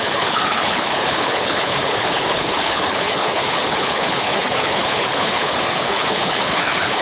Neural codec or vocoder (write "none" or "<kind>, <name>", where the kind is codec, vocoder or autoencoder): codec, HILCodec